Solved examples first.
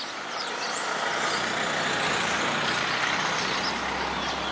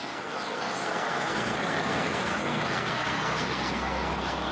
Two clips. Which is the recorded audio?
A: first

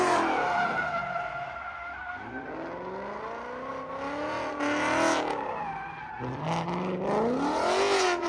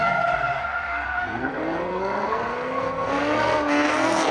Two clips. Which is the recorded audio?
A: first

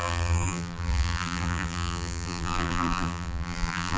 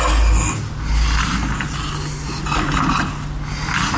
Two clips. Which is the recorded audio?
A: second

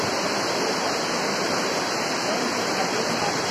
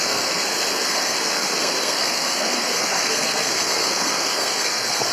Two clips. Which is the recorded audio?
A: first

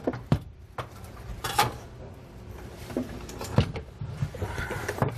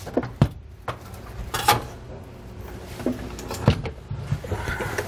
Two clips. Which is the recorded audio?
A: second